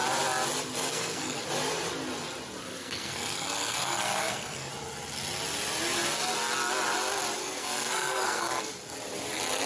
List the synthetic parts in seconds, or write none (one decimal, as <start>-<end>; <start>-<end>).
0.8-1.4; 2.6-4.7; 7.4-8.7